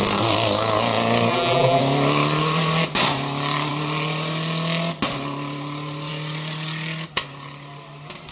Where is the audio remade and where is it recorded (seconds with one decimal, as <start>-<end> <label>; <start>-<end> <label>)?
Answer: 0.0-1.3 recorded; 1.3-1.8 remade; 1.8-8.3 recorded